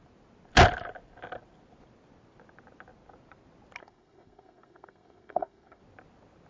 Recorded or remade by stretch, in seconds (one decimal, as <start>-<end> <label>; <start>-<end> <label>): 0.0-3.8 recorded; 3.8-5.8 remade; 5.8-6.5 recorded